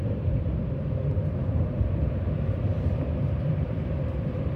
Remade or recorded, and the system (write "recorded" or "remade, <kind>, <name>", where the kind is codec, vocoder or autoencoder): remade, vocoder, BigVGAN v2